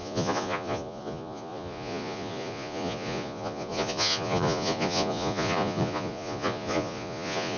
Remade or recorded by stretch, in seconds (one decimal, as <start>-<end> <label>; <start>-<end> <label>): 0.0-7.6 remade